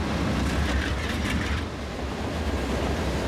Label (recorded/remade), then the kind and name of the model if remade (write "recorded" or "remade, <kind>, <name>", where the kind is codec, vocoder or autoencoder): recorded